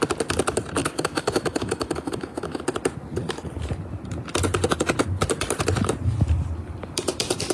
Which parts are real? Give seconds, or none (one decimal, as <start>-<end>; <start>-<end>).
0.0-0.8; 2.6-7.5